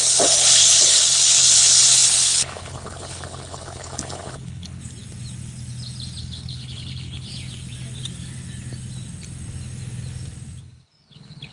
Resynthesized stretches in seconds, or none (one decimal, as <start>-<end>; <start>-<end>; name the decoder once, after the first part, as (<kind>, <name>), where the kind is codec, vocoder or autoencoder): 0.0-4.8 (codec, HILCodec); 6.2-7.3; 10.6-11.5